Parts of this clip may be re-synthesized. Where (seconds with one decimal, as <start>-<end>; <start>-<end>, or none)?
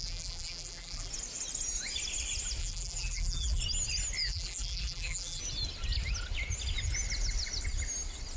0.0-1.1; 2.6-3.6; 4.2-5.4